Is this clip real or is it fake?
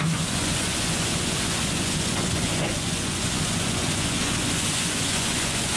fake